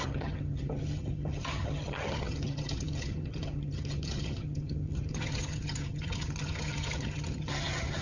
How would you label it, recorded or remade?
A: remade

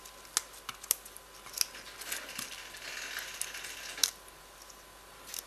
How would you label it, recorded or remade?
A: recorded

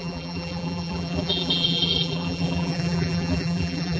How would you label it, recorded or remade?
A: remade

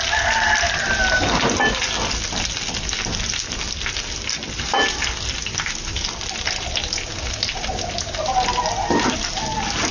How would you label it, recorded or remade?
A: recorded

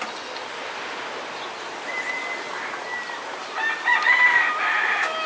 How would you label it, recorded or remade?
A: recorded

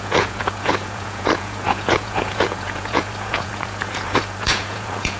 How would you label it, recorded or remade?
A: remade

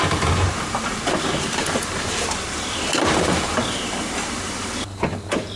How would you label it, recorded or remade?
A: remade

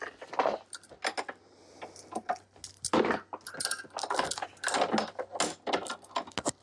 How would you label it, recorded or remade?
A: recorded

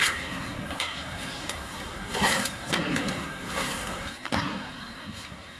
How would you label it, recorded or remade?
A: remade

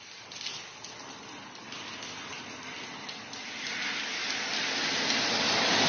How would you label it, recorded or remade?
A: recorded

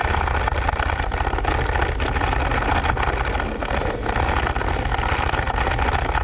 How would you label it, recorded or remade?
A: recorded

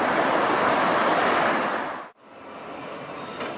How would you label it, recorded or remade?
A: recorded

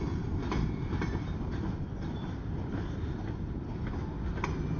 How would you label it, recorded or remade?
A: recorded